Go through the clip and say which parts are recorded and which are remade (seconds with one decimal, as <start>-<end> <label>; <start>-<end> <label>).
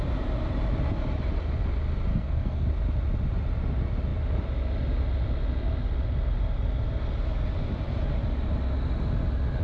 0.0-2.1 recorded; 2.1-2.7 remade; 2.7-9.6 recorded